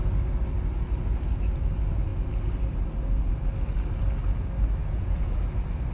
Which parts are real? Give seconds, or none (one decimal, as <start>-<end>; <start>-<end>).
0.0-4.8; 5.4-5.9

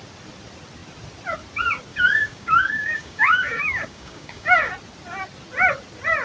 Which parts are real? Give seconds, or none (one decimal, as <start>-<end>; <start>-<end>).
0.0-1.9; 4.7-6.2

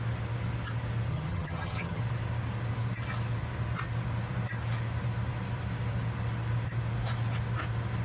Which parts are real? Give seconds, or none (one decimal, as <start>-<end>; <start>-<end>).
0.0-1.1; 2.0-8.0

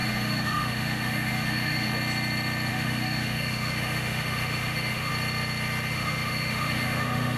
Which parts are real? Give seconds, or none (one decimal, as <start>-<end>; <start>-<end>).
1.9-2.7; 5.1-5.9

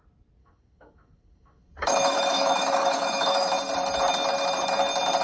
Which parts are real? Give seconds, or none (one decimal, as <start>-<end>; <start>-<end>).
0.0-0.4; 3.5-5.2